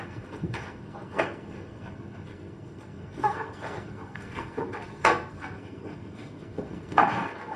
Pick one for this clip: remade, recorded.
remade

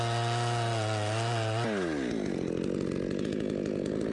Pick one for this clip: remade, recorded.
recorded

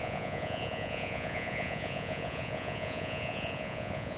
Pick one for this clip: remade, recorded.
remade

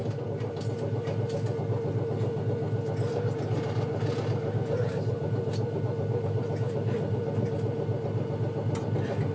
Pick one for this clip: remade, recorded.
recorded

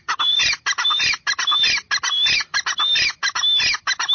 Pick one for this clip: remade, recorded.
recorded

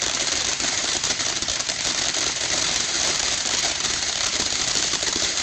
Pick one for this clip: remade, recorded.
remade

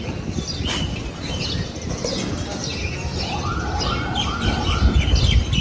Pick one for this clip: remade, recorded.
recorded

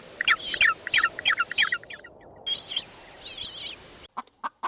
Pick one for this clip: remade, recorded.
recorded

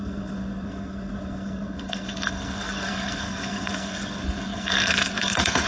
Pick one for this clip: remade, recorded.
remade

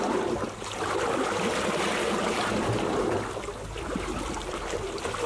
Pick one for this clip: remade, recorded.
recorded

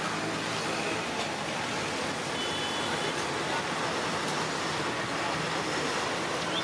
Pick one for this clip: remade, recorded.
recorded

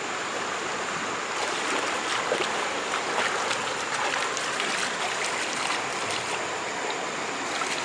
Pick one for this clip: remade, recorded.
recorded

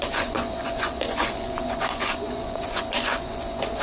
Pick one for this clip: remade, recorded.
remade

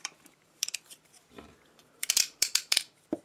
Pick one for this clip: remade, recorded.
remade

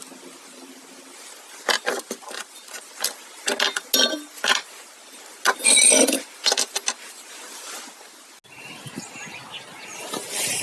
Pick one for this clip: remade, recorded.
recorded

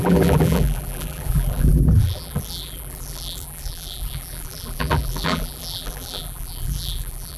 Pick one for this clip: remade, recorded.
remade